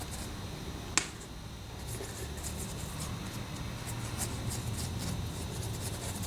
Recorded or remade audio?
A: recorded